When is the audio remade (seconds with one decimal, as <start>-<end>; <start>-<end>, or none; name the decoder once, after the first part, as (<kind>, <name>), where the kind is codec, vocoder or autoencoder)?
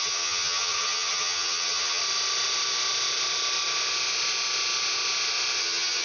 0.0-2.0 (vocoder, HiFi-GAN); 5.6-6.0